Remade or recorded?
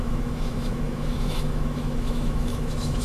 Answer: remade